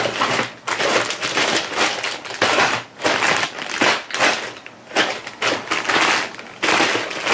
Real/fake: real